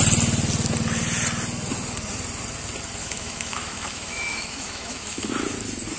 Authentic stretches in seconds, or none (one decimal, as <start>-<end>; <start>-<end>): 0.0-3.0; 5.3-6.0